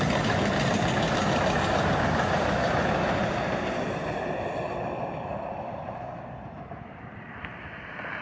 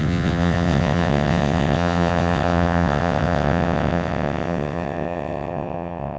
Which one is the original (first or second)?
first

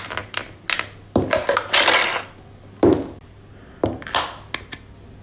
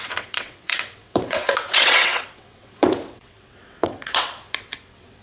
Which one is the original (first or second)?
first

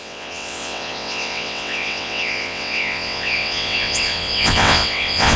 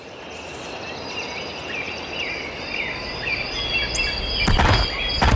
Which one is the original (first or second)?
second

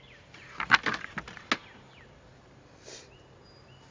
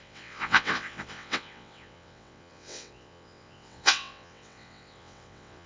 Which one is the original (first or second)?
first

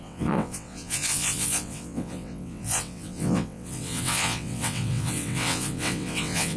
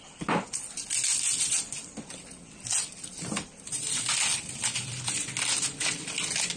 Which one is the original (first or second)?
second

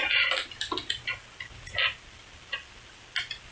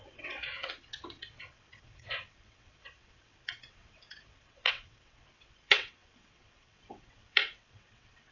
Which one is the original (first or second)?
first